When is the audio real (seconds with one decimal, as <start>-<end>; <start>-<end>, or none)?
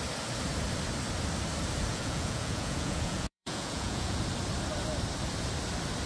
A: 0.0-1.9; 4.2-6.1